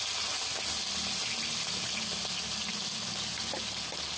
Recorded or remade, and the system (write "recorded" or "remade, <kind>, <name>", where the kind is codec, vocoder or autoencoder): recorded